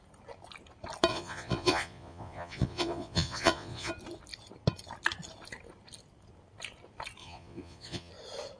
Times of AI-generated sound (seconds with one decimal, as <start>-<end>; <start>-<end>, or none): 1.1-3.9; 7.2-8.1